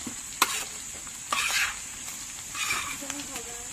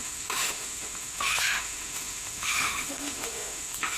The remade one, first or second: second